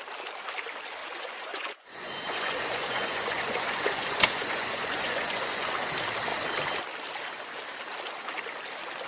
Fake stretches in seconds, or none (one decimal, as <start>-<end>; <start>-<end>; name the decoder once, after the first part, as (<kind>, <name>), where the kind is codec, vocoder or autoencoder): 1.0-5.7 (vocoder, Vocos)